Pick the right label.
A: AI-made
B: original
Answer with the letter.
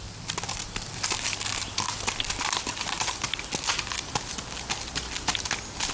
B